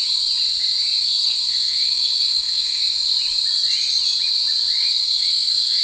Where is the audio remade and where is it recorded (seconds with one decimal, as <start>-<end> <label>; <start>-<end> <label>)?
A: 0.0-1.0 recorded; 1.0-2.8 remade; 2.8-4.9 recorded; 4.9-5.8 remade